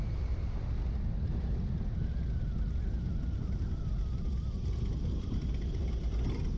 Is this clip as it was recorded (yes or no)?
yes